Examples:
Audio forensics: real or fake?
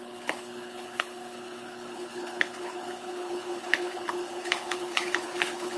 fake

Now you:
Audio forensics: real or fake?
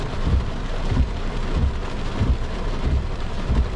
fake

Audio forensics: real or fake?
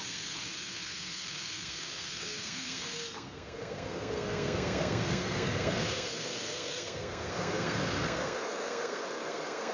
fake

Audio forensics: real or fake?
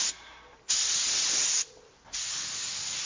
real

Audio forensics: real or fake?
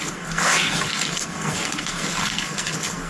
fake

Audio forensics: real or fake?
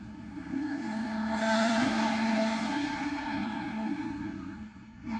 fake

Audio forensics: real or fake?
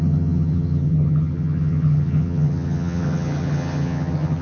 fake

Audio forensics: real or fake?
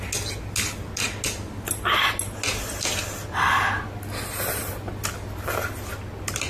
real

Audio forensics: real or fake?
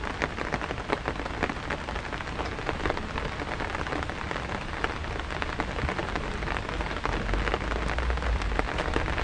real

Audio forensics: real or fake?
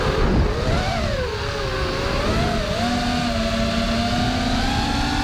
real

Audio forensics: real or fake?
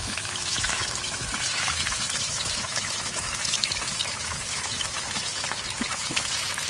fake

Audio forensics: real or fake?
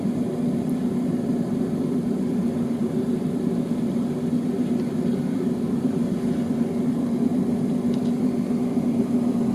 fake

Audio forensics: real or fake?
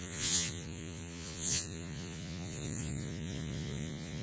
fake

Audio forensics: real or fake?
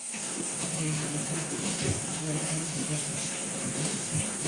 fake